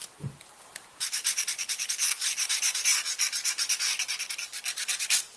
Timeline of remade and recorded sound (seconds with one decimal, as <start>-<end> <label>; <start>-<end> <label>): 0.0-1.4 remade; 1.4-2.4 recorded; 2.4-2.9 remade; 2.9-4.7 recorded; 4.7-5.4 remade